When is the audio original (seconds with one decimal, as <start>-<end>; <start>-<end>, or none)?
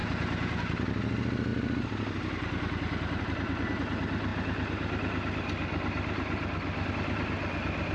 0.0-7.9